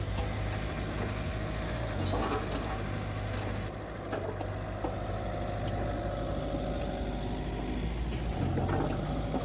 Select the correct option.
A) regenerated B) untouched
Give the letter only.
B